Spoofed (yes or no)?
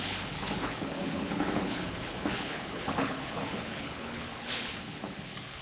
yes